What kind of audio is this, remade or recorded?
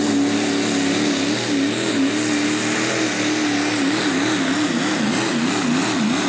recorded